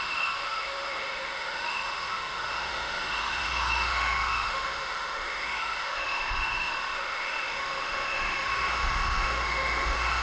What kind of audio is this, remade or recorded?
remade